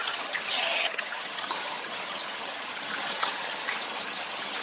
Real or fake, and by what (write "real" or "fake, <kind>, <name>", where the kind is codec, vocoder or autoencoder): fake, vocoder, HiFi-GAN